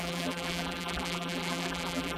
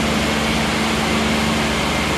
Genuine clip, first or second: second